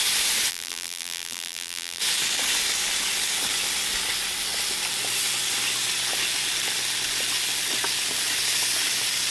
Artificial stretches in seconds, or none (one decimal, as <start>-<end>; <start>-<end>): 0.5-2.0